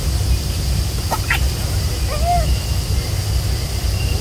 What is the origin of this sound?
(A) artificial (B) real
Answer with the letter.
B